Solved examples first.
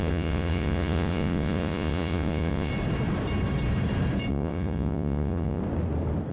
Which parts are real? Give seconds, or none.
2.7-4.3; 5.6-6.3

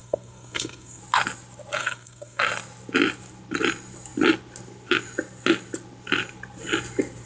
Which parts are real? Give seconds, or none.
1.0-1.8; 2.4-7.3

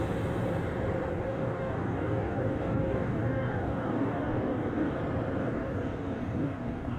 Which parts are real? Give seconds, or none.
0.0-1.1; 5.0-5.4

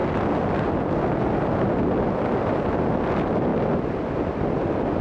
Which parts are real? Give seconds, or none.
0.0-5.0